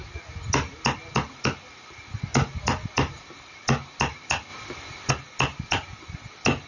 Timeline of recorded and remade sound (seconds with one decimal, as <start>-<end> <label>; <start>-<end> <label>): 0.0-6.7 recorded